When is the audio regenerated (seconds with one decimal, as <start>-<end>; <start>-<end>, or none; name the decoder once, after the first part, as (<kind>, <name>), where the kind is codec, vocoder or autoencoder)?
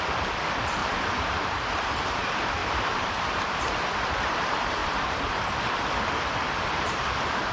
0.8-2.2 (vocoder, BigVGAN v2); 2.6-3.7; 4.8-5.6